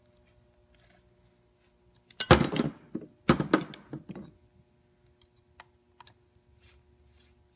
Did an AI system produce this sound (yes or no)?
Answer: no